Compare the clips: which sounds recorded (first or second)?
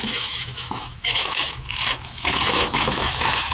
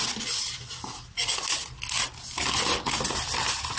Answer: second